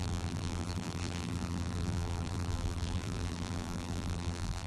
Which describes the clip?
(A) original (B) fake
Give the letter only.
B